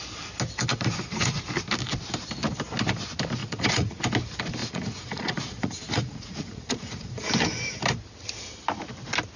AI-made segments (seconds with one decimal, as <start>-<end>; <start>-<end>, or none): 0.7-1.4; 3.4-4.0; 4.6-7.3